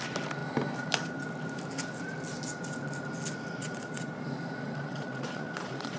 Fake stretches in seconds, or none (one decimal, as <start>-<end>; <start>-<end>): 3.6-4.1; 4.9-6.0